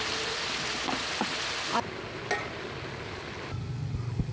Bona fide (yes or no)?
yes